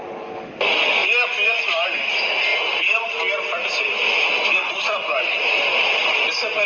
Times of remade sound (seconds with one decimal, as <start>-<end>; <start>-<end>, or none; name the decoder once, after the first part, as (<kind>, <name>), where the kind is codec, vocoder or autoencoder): none